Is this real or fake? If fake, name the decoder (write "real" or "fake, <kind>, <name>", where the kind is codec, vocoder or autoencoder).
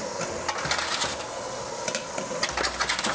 real